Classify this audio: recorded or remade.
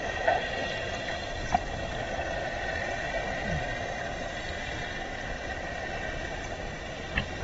recorded